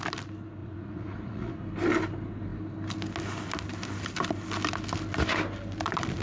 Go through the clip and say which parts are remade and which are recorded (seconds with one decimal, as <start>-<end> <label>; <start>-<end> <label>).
0.0-0.6 recorded; 0.6-1.5 remade; 1.5-6.2 recorded